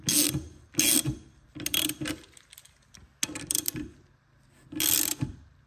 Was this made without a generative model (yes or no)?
yes